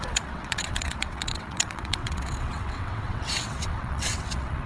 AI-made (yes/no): yes